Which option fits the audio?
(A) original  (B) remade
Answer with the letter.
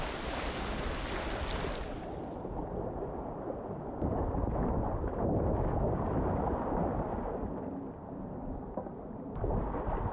A